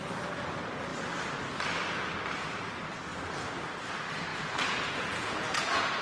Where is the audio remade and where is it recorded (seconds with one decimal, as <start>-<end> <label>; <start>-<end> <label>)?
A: 0.0-4.3 recorded; 4.3-6.0 remade